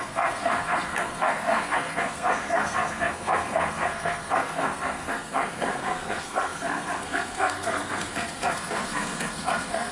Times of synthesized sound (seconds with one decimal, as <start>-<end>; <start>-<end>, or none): 0.0-9.9